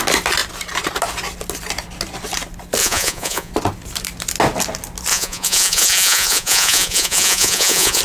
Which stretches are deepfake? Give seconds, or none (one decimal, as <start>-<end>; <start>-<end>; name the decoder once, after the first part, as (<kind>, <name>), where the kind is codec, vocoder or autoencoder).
2.8-3.5 (vocoder, Vocos); 5.1-8.0

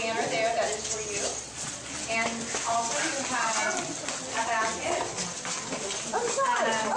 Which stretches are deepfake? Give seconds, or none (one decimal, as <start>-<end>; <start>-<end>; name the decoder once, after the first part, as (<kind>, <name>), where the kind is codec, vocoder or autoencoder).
1.3-1.9 (vocoder, Vocos)

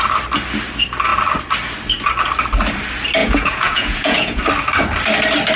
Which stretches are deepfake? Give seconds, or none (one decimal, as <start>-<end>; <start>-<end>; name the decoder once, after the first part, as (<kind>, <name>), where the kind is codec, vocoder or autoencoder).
3.2-4.4 (vocoder, Vocos)

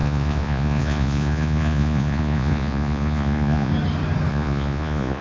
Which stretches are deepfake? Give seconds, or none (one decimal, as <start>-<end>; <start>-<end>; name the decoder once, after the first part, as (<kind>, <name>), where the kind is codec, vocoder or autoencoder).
0.0-3.7 (vocoder, Vocos); 4.3-5.2

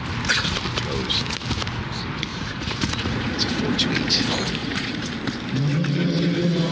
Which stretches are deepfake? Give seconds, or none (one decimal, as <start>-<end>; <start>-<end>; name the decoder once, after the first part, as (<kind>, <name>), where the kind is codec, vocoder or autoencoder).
2.3-3.9 (vocoder, Vocos); 4.6-5.1

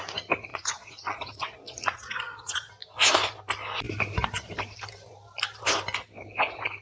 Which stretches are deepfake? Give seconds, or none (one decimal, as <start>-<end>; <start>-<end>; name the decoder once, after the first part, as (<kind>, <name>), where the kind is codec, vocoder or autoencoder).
0.5-2.7 (vocoder, Vocos)

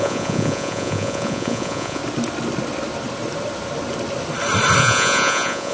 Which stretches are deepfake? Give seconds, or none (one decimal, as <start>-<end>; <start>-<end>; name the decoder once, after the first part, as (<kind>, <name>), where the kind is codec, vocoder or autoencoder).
0.0-2.0 (vocoder, Vocos); 4.8-5.7

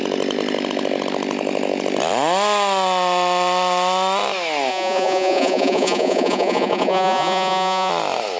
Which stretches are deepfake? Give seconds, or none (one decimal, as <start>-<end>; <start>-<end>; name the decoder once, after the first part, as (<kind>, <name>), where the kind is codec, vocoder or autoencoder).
4.7-7.9 (vocoder, Vocos)